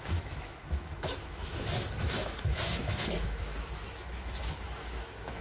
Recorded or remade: remade